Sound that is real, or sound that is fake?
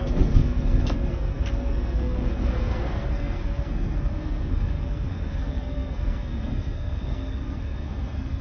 fake